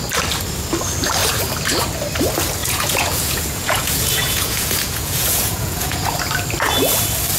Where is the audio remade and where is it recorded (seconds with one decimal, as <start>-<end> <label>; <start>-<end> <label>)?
0.0-2.6 recorded; 2.6-6.1 remade; 6.1-7.4 recorded